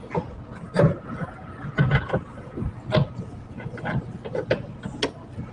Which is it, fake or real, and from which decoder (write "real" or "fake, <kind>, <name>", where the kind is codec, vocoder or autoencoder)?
real